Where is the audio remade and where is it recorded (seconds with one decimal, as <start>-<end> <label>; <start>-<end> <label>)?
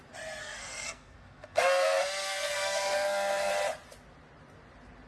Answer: 0.0-0.4 recorded; 0.4-3.5 remade; 3.5-5.1 recorded